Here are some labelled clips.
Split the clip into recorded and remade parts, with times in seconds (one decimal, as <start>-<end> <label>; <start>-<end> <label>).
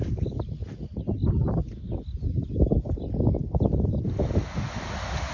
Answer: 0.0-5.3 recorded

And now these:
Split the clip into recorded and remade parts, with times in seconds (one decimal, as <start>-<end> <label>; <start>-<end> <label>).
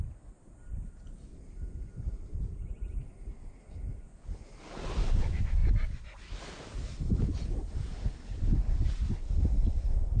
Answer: 0.0-10.2 recorded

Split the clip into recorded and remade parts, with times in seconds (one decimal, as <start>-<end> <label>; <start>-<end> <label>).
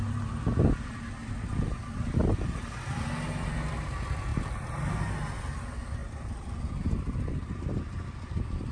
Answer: 0.0-1.2 recorded; 1.2-1.7 remade; 1.7-2.2 recorded; 2.2-2.7 remade; 2.7-6.0 recorded; 6.0-7.5 remade; 7.5-8.7 recorded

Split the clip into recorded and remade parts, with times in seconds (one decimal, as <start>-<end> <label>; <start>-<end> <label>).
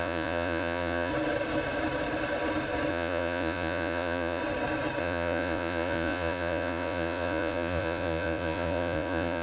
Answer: 0.0-1.1 remade; 1.1-2.9 recorded; 2.9-4.4 remade; 4.4-5.0 recorded; 5.0-9.4 remade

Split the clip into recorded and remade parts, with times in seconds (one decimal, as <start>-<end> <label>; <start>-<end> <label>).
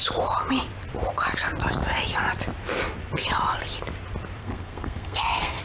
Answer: 0.0-4.4 recorded; 4.4-5.6 remade